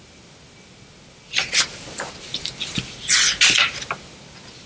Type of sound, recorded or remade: recorded